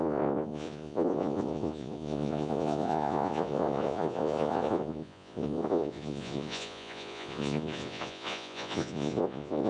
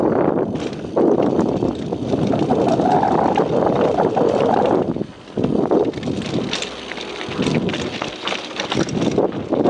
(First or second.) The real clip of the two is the second